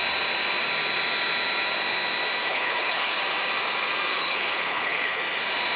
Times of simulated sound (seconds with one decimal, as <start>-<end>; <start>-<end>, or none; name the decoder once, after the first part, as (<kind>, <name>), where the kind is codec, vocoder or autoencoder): 2.5-3.2 (codec, HILCodec); 4.1-5.2